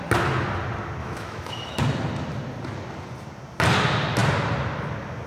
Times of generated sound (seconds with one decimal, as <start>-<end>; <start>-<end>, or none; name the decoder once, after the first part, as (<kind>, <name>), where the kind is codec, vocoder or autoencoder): 1.0-1.8 (autoencoder, DAC-VAE)